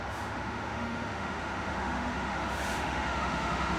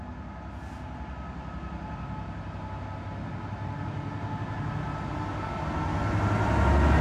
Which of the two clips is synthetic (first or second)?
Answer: first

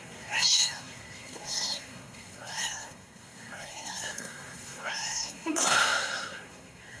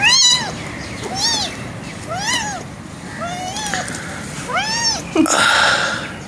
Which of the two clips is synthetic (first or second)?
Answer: first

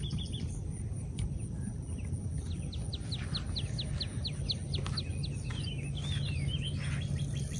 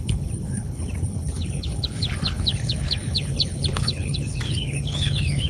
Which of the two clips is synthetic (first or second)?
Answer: second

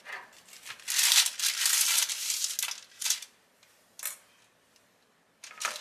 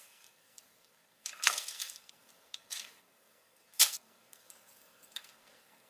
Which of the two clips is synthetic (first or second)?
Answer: second